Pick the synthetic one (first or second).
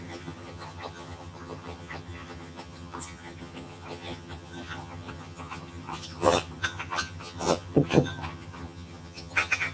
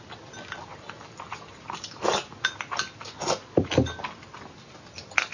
first